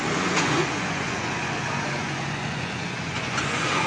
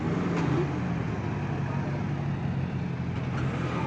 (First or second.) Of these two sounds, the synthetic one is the first